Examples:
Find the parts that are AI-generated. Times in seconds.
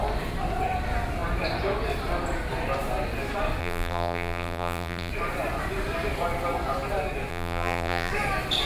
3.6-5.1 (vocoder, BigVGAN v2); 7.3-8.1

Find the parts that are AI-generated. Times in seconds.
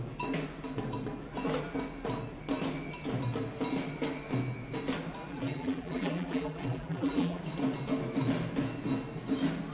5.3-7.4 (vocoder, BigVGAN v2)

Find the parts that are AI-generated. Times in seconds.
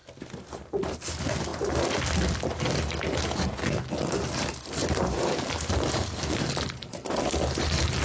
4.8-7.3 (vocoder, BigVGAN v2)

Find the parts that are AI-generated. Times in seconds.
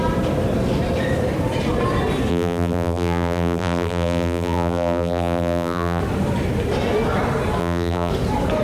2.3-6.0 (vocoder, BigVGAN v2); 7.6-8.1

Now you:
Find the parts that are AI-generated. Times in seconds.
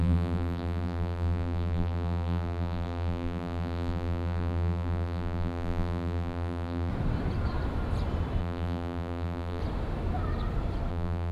0.0-6.9 (vocoder, BigVGAN v2); 8.4-9.6; 10.9-11.3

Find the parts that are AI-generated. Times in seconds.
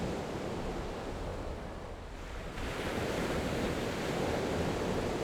none